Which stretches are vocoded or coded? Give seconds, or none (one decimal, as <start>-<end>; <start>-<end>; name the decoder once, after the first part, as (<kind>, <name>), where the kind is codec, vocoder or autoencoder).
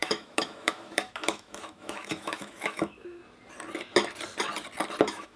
0.0-3.2 (autoencoder, DAC-VAE); 5.0-5.4